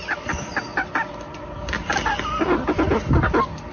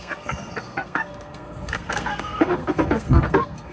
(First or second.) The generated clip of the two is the second